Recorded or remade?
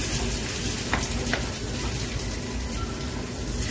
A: recorded